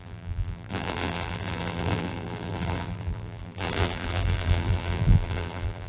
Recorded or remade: remade